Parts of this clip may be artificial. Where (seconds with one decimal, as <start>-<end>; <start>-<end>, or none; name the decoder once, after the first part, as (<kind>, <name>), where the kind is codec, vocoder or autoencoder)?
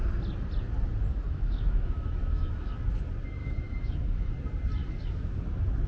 1.1-2.7 (autoencoder, DAC-VAE); 3.4-4.3; 4.8-5.4